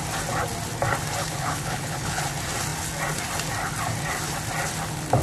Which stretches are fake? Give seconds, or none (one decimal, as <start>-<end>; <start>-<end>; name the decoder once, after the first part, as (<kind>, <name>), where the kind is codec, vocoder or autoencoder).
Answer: 1.2-2.2 (codec, HILCodec)